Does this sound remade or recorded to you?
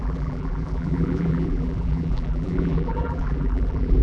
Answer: remade